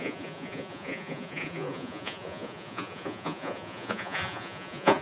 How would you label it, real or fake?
fake